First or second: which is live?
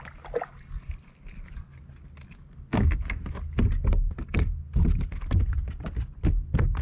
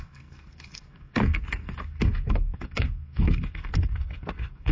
first